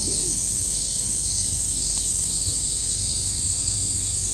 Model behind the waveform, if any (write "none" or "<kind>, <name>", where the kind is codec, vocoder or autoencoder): codec, SNAC